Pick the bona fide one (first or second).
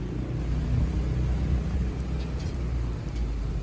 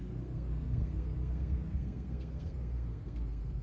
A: first